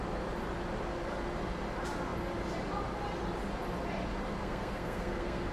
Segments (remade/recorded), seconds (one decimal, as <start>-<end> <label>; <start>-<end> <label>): 0.0-4.4 recorded; 4.4-5.5 remade